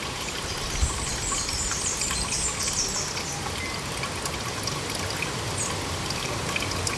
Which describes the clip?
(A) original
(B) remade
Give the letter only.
A